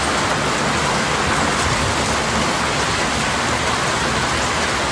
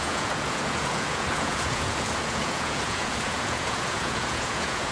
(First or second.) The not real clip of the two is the second